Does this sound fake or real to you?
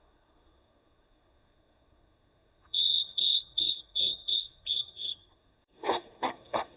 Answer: fake